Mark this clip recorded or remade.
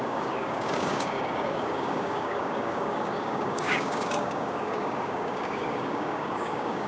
remade